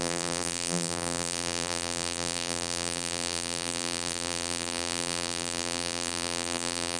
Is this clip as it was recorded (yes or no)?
no